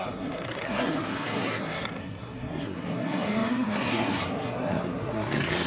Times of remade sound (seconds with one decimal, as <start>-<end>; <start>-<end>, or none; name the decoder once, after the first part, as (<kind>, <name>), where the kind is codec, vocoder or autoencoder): 0.0-5.7 (codec, SNAC)